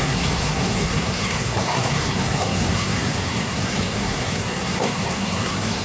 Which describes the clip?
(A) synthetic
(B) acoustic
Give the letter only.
A